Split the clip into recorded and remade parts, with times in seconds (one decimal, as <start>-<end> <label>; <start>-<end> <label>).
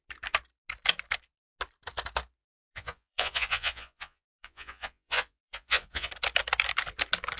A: 0.0-2.4 recorded; 2.4-6.1 remade; 6.1-7.4 recorded